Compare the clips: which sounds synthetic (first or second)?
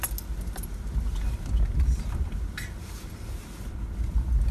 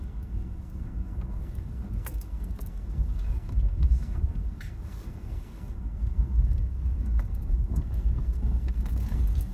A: second